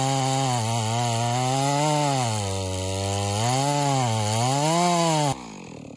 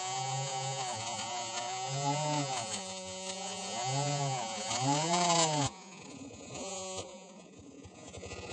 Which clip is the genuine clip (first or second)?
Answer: first